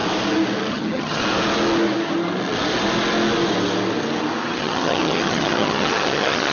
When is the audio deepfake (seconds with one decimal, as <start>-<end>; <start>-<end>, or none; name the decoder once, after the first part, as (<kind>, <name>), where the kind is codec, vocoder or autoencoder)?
0.7-1.2 (vocoder, HiFi-GAN); 4.5-6.5